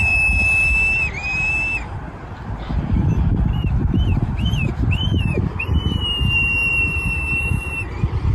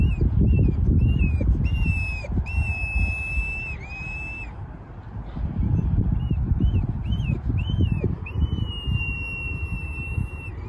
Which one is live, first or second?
second